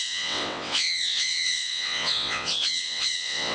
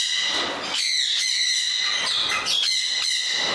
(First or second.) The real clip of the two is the second